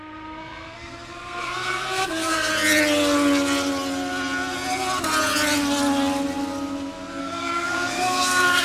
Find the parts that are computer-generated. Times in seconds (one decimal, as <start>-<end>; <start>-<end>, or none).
0.0-2.5; 7.2-8.6